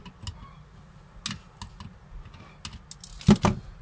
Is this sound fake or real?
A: real